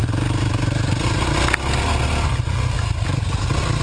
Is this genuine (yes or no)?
yes